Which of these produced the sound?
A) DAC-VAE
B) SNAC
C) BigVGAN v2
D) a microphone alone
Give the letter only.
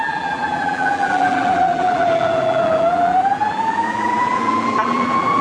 C